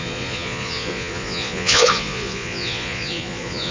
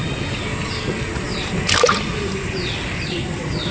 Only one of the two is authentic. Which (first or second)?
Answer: second